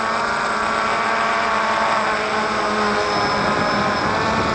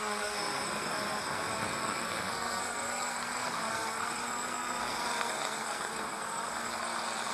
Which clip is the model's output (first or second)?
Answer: second